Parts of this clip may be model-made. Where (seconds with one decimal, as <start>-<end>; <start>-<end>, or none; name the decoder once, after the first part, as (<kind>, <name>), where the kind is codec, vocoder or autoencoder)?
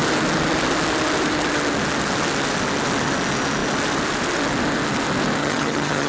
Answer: 5.4-6.1 (vocoder, HiFi-GAN)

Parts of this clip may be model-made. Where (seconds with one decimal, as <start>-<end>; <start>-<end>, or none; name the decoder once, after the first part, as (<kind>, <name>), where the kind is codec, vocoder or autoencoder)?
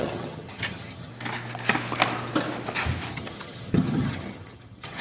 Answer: 0.0-1.1 (vocoder, HiFi-GAN); 3.1-5.0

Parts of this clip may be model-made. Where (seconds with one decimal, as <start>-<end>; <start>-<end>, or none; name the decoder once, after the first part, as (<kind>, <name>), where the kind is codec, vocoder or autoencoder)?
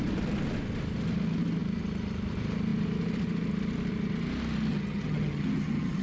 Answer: 4.7-6.0 (vocoder, HiFi-GAN)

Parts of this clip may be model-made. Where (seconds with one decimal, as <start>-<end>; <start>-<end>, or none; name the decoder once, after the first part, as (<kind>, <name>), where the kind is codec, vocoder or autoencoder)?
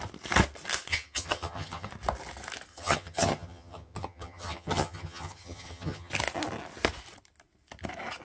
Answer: 0.9-1.9 (vocoder, HiFi-GAN); 2.7-6.1